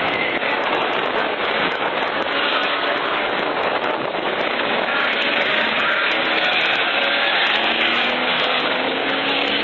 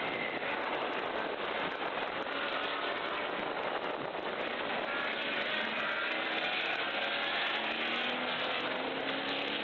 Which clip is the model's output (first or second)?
first